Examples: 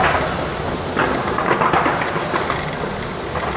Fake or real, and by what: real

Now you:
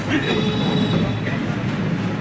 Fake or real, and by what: real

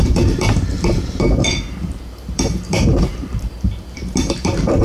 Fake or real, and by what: fake, vocoder, BigVGAN v2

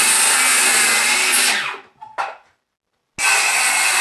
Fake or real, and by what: real